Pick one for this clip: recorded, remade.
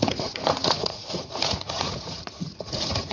remade